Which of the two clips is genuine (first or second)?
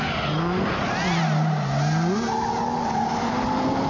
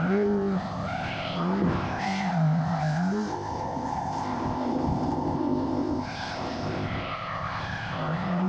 first